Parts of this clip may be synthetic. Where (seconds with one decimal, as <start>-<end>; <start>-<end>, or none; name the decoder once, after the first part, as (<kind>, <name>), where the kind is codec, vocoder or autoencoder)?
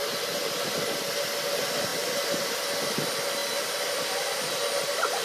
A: none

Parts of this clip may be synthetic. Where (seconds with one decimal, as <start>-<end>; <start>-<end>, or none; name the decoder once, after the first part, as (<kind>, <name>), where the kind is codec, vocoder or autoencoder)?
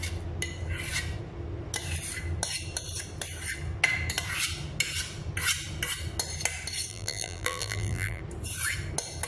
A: 6.9-8.2 (vocoder, BigVGAN v2)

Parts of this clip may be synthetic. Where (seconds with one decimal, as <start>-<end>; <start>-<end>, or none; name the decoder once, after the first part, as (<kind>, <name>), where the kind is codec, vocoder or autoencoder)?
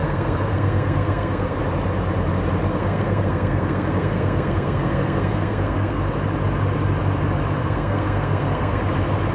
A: 0.0-1.6 (codec, SNAC); 2.7-6.0; 7.6-8.8